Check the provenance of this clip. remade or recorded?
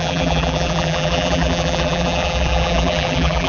remade